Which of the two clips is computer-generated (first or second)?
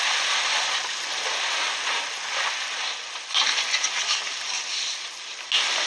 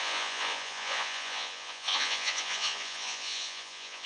second